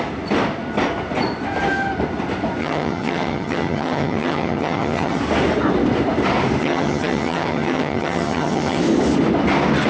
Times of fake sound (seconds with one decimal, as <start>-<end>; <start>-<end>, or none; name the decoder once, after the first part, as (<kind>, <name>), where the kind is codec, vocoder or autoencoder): 2.6-5.2 (vocoder, HiFi-GAN); 6.6-8.8

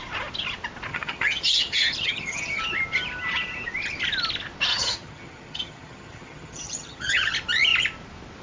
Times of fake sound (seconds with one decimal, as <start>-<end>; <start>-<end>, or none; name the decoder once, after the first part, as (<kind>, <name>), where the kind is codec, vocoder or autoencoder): 0.9-2.6 (vocoder, HiFi-GAN); 4.7-7.3

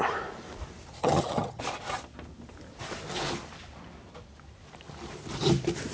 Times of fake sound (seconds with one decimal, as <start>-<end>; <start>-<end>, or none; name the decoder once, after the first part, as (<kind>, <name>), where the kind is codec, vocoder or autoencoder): 1.0-1.6 (vocoder, HiFi-GAN)

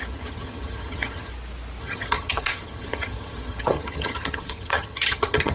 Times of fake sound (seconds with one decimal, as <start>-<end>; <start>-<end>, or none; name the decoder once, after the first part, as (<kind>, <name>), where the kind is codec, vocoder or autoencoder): 0.0-1.3 (vocoder, HiFi-GAN); 1.8-5.5

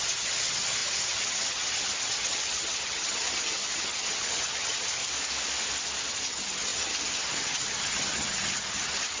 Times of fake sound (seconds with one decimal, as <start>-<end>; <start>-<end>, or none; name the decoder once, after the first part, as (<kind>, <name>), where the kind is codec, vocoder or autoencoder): 0.0-5.0 (vocoder, HiFi-GAN); 6.1-9.2

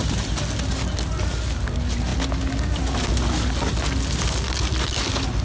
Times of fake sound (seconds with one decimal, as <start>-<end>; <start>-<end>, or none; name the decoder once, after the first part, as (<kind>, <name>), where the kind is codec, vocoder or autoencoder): none

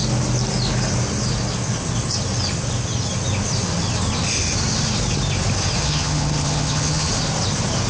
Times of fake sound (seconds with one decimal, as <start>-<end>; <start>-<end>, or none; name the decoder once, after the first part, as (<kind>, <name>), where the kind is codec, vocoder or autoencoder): 5.8-7.1 (vocoder, HiFi-GAN)